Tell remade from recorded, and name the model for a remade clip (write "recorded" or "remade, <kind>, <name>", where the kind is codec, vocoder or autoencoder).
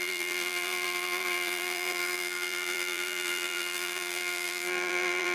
remade, vocoder, BigVGAN v2